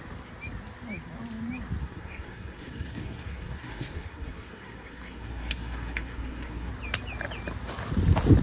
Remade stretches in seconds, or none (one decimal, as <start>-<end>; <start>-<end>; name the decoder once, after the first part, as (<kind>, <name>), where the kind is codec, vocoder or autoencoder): 1.8-6.7 (codec, SNAC)